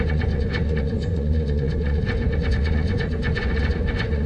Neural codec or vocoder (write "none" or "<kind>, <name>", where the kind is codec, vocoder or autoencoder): vocoder, Vocos